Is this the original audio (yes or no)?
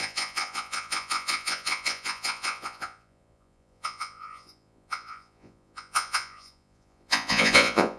no